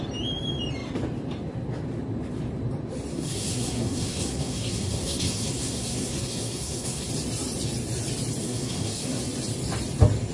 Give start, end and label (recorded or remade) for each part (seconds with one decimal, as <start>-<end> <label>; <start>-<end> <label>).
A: 0.0-3.1 recorded; 3.1-7.1 remade; 7.1-8.4 recorded; 8.4-9.2 remade; 9.2-10.3 recorded